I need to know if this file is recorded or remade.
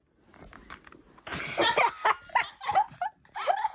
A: recorded